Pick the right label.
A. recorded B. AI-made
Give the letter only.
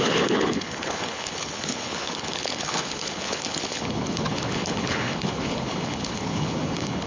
B